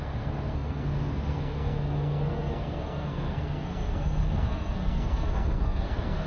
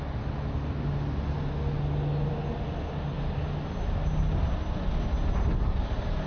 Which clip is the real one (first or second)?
second